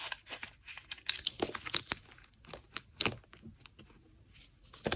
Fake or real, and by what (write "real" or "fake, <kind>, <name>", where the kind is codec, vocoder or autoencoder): real